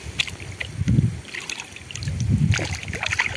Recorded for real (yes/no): yes